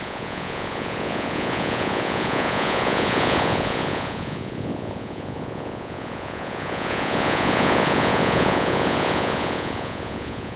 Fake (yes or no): yes